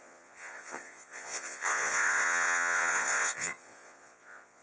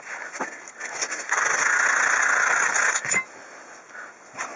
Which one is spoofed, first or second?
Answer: first